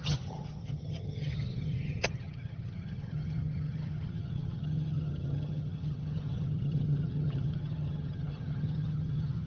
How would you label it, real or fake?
fake